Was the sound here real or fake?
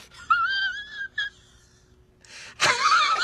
real